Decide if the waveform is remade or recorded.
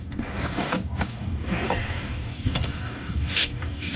remade